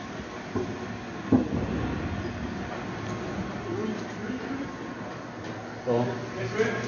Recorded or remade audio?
recorded